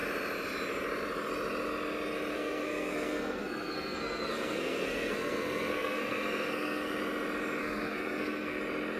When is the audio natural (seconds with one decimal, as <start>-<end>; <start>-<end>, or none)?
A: 0.0-2.3; 7.0-7.6; 8.6-9.0